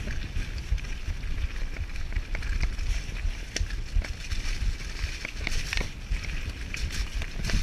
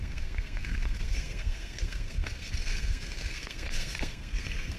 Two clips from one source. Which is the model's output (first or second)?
second